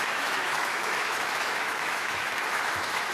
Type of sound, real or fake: fake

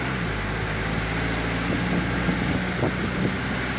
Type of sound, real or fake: real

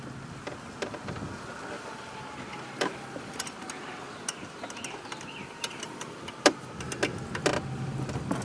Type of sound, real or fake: real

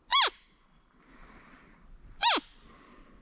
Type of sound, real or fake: real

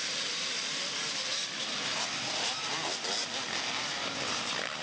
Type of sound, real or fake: fake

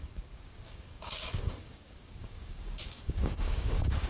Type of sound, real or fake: fake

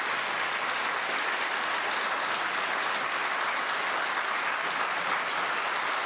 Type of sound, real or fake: real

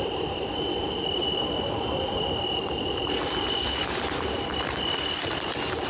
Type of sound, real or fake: real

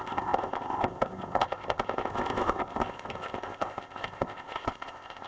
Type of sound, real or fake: fake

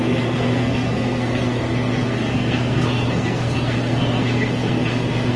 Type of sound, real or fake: fake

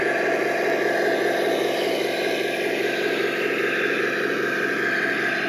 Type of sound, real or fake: real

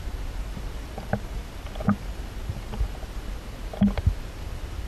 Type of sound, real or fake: real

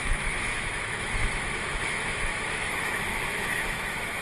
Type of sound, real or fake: fake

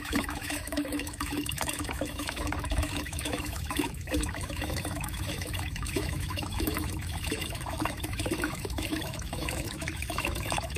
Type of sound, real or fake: fake